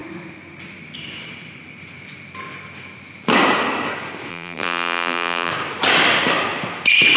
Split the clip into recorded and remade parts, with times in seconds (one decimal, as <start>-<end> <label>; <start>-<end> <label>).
0.0-4.3 recorded; 4.3-5.5 remade; 5.5-7.2 recorded